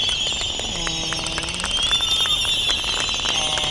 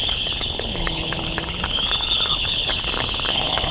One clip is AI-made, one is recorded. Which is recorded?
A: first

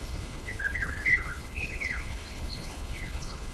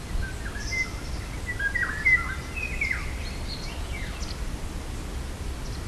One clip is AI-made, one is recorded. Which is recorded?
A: second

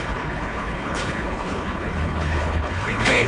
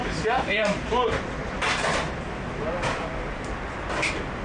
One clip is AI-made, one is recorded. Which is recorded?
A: second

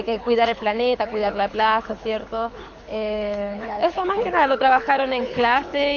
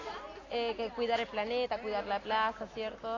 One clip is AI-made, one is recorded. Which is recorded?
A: second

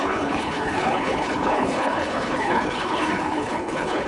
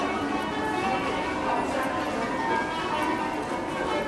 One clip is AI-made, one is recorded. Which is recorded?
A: second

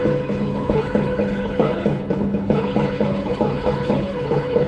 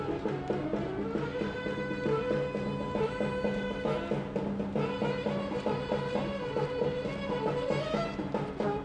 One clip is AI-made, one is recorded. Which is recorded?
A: second